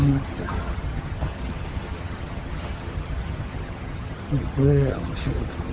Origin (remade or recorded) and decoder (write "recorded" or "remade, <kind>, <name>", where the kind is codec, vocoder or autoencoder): remade, vocoder, HiFi-GAN